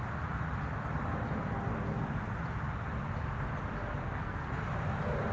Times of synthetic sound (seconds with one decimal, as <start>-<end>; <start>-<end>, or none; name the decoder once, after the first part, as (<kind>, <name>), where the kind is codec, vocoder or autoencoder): 4.0-4.6 (codec, SNAC)